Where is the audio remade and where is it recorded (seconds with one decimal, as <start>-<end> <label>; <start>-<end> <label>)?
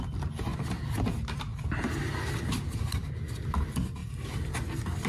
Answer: 0.0-5.1 recorded